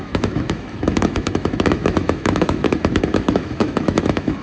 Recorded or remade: remade